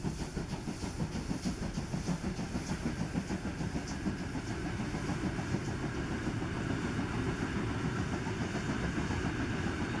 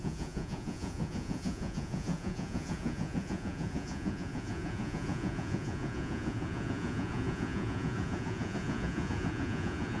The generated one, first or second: second